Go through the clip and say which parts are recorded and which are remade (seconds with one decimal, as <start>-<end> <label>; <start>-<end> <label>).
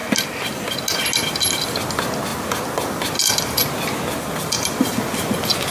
0.0-5.7 recorded